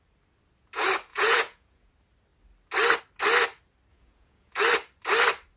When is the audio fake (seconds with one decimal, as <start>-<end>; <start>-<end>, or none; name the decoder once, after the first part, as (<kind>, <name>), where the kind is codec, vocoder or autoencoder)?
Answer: 1.1-1.9 (vocoder, Vocos); 3.9-4.6